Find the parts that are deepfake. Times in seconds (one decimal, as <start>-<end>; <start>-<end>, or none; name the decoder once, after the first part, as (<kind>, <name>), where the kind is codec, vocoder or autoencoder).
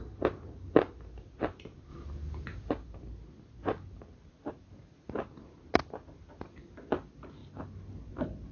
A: none